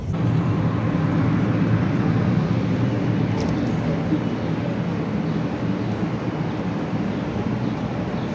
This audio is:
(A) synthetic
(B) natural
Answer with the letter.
B